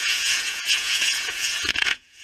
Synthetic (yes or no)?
yes